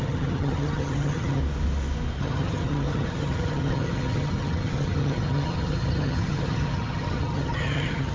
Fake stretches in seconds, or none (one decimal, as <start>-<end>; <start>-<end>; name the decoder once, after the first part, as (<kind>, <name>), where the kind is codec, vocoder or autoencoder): 0.0-1.4 (vocoder, HiFi-GAN); 2.2-8.1